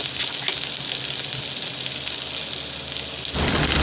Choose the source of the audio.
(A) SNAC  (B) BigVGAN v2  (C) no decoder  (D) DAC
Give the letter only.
C